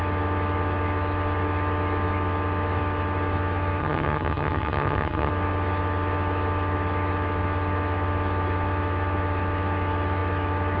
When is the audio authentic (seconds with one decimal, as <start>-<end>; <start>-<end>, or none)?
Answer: 0.0-3.8; 5.3-10.8